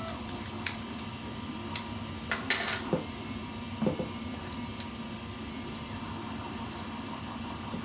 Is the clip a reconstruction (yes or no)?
no